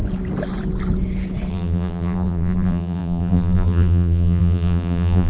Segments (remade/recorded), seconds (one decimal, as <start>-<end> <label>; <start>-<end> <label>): 0.0-1.5 recorded; 1.5-5.3 remade